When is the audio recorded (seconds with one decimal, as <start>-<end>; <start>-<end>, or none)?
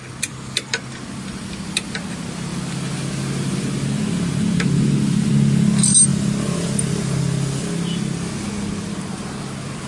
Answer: 0.0-9.9